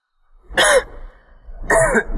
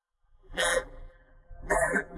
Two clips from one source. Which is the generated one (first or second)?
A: second